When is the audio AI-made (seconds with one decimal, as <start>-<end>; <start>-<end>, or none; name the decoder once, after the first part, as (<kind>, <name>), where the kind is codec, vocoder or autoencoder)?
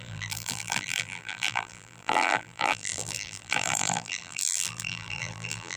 0.0-5.8 (vocoder, BigVGAN v2)